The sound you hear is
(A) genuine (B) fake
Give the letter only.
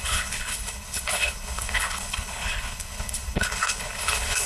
B